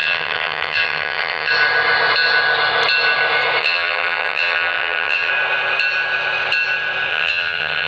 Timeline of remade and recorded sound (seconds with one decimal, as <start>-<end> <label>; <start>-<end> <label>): 0.0-1.5 remade; 1.5-3.6 recorded; 3.6-5.3 remade; 5.3-7.1 recorded; 7.1-7.9 remade